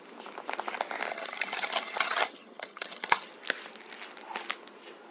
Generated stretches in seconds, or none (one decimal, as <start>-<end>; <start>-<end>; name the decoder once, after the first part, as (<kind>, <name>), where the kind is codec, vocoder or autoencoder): 1.1-3.3 (vocoder, HiFi-GAN)